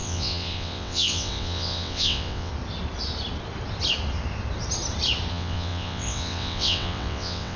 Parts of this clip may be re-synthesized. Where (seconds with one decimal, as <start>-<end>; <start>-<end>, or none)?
0.0-2.5; 5.3-7.6